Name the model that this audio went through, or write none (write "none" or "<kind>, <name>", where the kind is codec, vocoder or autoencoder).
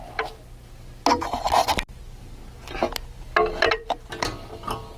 none